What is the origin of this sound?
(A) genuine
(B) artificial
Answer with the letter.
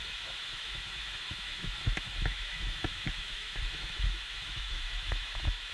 B